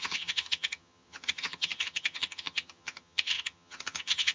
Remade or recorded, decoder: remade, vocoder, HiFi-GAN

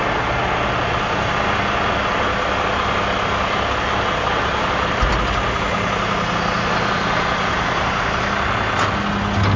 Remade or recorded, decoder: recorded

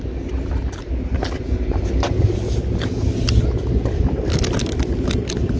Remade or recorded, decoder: recorded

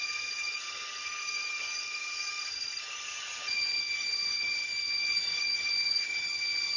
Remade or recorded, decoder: remade, vocoder, HiFi-GAN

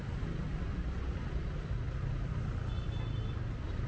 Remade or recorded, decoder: recorded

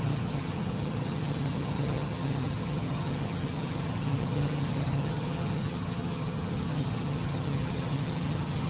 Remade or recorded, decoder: remade, vocoder, HiFi-GAN